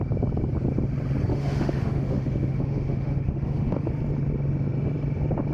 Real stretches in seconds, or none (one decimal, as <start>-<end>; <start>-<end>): 0.0-1.3; 3.9-5.5